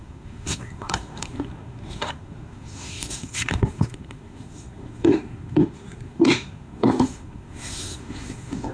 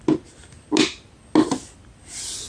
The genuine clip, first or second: second